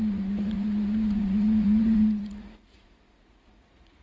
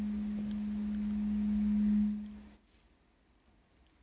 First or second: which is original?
second